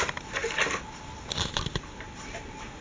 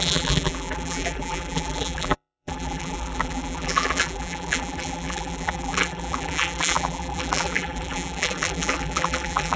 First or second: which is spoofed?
second